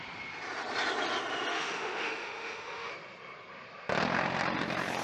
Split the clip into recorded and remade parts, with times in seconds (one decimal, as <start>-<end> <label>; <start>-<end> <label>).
0.0-1.5 recorded; 1.5-2.9 remade; 2.9-5.0 recorded